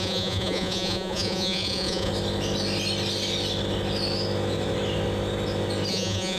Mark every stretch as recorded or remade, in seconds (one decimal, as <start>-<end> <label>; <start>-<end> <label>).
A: 0.0-2.1 remade; 2.1-5.9 recorded; 5.9-6.4 remade